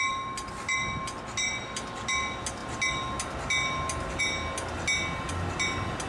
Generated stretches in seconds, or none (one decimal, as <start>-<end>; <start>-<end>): none